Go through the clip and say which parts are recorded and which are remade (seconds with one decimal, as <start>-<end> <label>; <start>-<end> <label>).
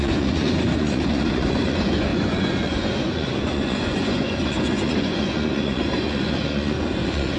0.0-7.4 remade